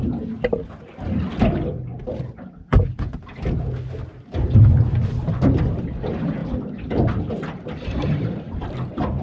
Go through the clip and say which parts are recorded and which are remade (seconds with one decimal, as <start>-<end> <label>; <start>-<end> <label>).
0.0-9.2 recorded